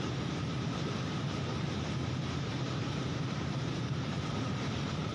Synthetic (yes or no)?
yes